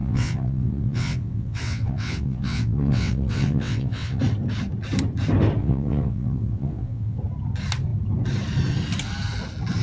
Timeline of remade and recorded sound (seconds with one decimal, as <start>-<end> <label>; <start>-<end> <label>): 0.0-4.2 remade; 4.2-5.6 recorded; 5.6-7.2 remade; 7.2-9.8 recorded

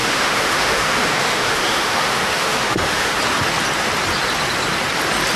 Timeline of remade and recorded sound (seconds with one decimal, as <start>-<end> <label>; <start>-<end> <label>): 0.0-3.2 remade; 3.2-5.4 recorded

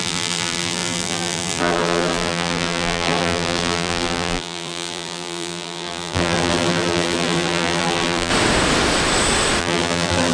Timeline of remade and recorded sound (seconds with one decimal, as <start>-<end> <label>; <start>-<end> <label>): 0.0-8.3 remade; 8.3-9.6 recorded; 9.6-10.3 remade

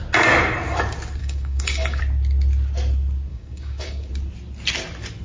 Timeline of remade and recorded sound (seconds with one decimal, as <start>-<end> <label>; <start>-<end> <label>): 0.0-1.2 recorded; 1.2-2.0 remade; 2.0-3.3 recorded; 3.3-4.1 remade; 4.1-5.2 recorded

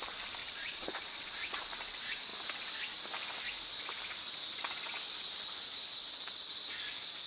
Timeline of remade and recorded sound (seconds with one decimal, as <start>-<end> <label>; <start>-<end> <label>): 0.0-0.4 recorded; 0.4-1.6 remade; 1.6-7.3 recorded

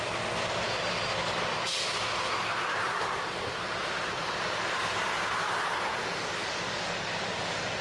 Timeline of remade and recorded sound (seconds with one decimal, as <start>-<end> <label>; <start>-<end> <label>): 0.0-2.7 recorded; 2.7-4.4 remade; 4.4-7.8 recorded

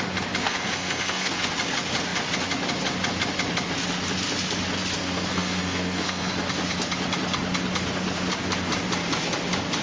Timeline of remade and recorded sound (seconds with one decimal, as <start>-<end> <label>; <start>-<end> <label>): 0.0-0.4 recorded; 0.4-1.5 remade; 1.5-5.0 recorded; 5.0-6.3 remade; 6.3-9.8 recorded

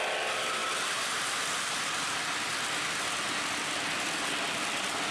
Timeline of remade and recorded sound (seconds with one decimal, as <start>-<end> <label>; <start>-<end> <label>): 0.0-5.1 recorded